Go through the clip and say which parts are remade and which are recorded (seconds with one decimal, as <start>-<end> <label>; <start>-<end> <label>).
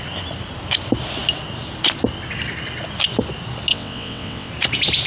0.0-3.7 recorded; 3.7-4.5 remade; 4.5-5.1 recorded